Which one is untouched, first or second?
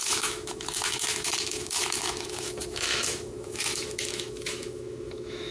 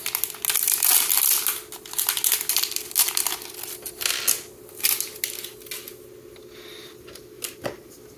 second